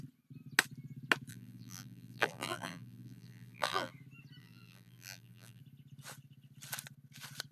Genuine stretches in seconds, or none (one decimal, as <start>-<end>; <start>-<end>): 0.0-1.3; 3.9-4.4; 5.6-7.5